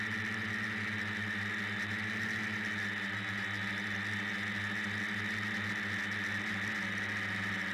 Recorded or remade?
recorded